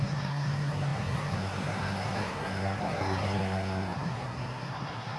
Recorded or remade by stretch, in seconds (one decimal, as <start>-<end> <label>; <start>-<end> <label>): 0.0-5.2 remade